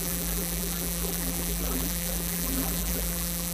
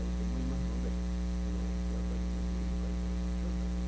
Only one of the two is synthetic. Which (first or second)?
first